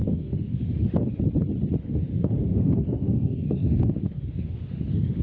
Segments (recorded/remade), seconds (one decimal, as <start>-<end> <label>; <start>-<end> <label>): 0.0-1.2 remade; 1.2-1.8 recorded; 1.8-5.2 remade

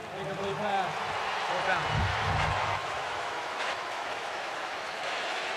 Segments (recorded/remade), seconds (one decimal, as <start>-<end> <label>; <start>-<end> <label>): 0.0-2.1 recorded; 2.1-5.6 remade

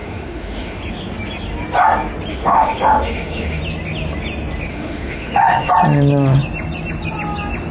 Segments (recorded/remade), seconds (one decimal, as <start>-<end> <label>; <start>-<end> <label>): 0.0-0.8 remade; 0.8-2.3 recorded; 2.3-3.6 remade; 3.6-4.7 recorded; 4.7-5.7 remade; 5.7-7.7 recorded

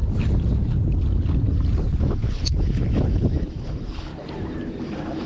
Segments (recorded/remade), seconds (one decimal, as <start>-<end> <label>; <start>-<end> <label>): 0.0-2.0 recorded; 2.0-4.1 remade; 4.1-4.8 recorded; 4.8-5.3 remade

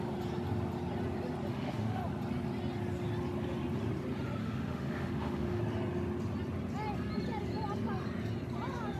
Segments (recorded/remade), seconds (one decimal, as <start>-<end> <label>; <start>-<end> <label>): 0.0-1.5 recorded; 1.5-2.0 remade; 2.0-4.4 recorded; 4.4-5.6 remade; 5.6-9.0 recorded

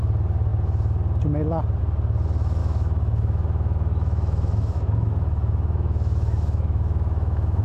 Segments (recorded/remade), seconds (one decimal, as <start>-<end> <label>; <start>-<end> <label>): 0.0-2.6 recorded; 2.6-7.6 remade